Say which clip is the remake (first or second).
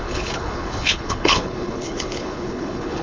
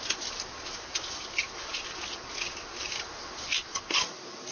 first